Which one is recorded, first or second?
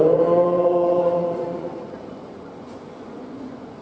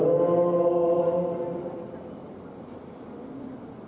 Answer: second